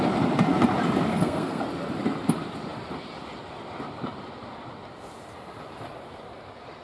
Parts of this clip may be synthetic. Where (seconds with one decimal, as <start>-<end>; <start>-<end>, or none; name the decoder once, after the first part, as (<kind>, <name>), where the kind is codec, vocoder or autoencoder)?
1.1-1.6 (codec, SNAC)